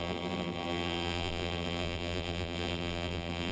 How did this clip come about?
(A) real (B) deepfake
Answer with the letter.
B